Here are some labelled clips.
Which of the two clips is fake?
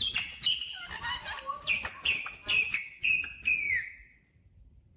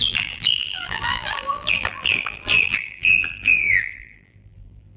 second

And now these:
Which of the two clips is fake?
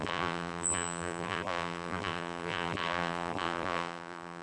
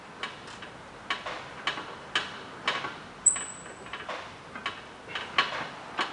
first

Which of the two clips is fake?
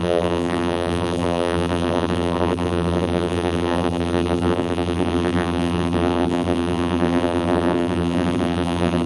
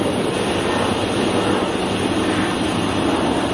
first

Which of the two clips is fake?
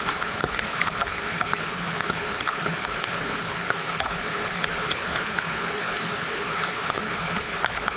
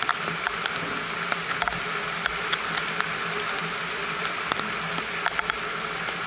first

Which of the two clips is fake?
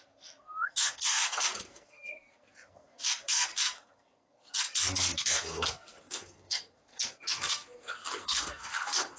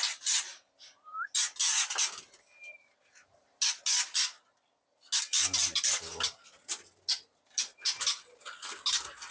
first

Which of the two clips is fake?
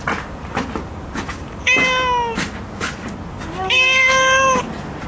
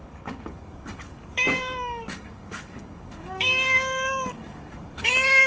second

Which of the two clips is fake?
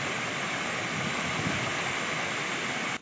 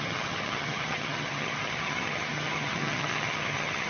second